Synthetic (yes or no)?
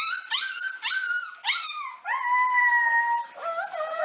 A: no